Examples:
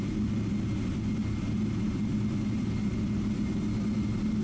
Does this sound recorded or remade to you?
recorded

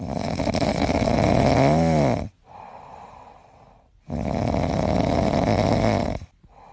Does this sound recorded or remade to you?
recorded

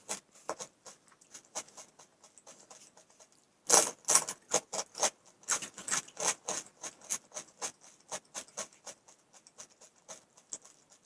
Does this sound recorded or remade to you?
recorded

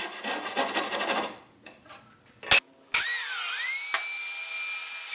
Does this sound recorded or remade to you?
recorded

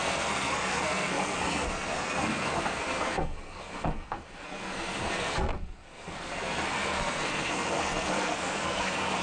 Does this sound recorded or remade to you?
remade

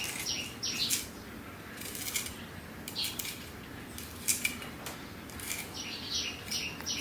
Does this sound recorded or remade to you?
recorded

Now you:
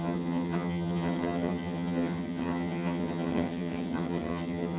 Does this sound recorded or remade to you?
remade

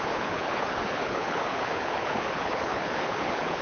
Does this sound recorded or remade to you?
remade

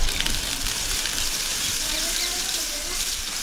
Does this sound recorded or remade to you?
remade